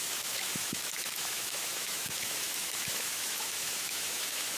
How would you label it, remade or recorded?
remade